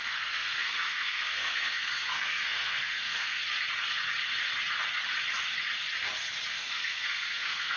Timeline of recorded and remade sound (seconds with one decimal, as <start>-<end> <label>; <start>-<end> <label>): 0.0-3.4 remade; 3.4-6.5 recorded; 6.5-7.8 remade